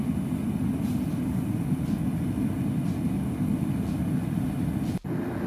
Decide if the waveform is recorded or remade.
recorded